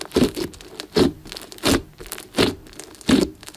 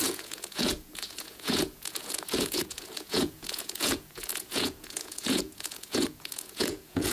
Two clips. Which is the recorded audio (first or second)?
first